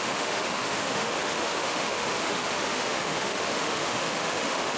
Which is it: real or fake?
fake